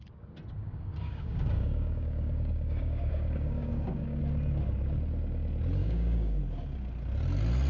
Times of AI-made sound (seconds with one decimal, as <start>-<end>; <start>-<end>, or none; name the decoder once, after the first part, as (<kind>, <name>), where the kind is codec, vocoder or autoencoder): 0.6-4.2 (codec, DAC); 5.8-6.4